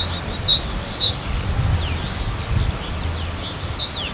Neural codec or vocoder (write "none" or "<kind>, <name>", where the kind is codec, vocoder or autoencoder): none